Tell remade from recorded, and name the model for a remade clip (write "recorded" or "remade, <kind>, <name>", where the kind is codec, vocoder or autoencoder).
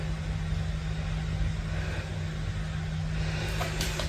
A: recorded